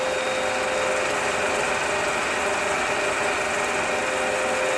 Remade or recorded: recorded